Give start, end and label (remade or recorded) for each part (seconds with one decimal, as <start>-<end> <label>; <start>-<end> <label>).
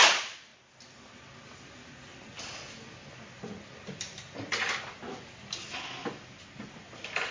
0.0-7.3 recorded